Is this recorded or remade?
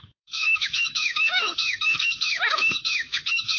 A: remade